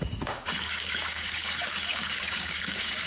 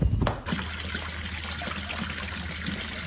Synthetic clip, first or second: first